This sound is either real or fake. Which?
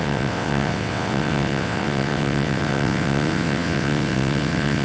fake